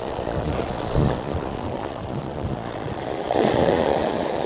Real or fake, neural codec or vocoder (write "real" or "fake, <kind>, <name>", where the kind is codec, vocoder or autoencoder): fake, vocoder, Vocos